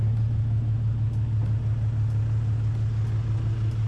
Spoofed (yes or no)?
no